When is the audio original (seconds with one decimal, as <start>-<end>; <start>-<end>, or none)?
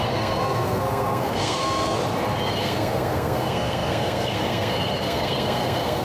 2.0-2.6